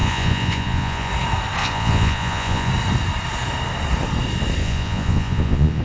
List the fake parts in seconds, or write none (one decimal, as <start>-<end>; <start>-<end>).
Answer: 0.0-1.1; 1.6-2.7; 4.6-5.8